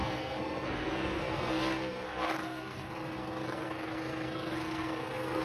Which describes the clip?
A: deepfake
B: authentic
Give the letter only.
A